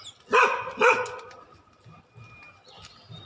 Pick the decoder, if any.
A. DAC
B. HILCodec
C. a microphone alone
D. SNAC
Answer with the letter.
C